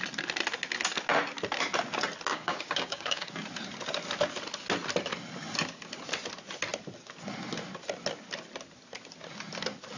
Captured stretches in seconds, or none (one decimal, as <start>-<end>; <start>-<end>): 0.0-2.3; 3.3-10.0